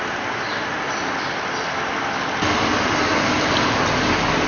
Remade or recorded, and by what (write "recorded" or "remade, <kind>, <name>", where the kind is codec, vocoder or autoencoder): recorded